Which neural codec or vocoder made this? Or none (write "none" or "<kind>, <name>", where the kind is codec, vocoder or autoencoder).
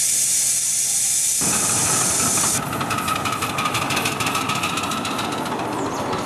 none